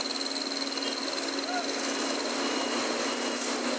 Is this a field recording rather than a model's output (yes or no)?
yes